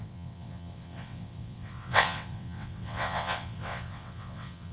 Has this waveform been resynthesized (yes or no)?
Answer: yes